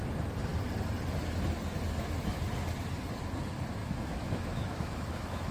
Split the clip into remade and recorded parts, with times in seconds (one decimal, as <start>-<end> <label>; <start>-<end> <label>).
0.0-3.8 recorded; 3.8-5.5 remade